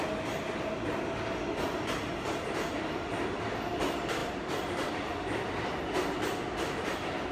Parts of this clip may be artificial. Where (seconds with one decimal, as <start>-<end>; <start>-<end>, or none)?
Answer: none